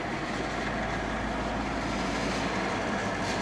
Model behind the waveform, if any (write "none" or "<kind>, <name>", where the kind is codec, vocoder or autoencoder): none